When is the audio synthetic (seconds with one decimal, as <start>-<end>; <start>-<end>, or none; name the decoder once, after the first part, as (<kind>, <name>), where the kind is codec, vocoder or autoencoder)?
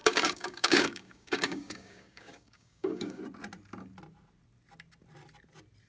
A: 0.0-3.2 (codec, DAC)